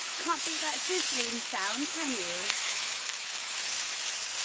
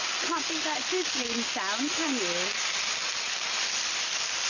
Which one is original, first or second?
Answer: second